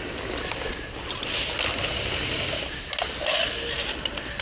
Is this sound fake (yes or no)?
no